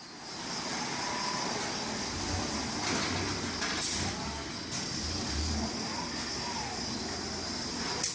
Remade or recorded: recorded